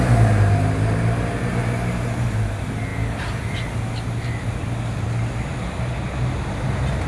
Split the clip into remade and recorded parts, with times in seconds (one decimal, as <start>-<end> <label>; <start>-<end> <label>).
0.0-7.1 recorded